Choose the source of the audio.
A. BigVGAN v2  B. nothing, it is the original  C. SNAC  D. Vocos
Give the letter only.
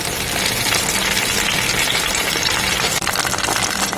A